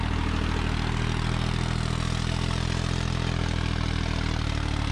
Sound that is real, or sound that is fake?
real